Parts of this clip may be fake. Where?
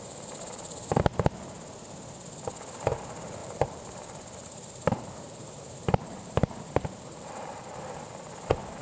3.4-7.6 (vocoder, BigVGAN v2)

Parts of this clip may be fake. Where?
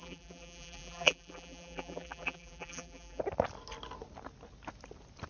0.0-3.2 (vocoder, BigVGAN v2)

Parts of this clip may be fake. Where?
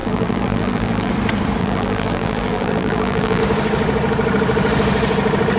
0.0-1.1 (vocoder, BigVGAN v2); 1.6-3.4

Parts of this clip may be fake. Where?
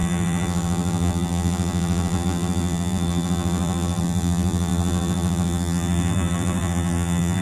0.0-7.4 (vocoder, BigVGAN v2)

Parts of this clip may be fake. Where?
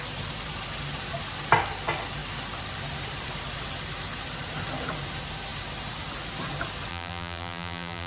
6.9-8.1 (vocoder, BigVGAN v2)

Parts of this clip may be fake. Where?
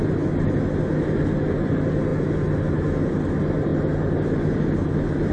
none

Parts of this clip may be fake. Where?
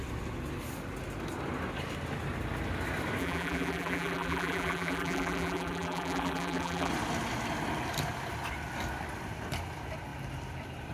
3.2-6.9 (vocoder, BigVGAN v2)